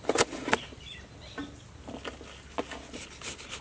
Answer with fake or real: real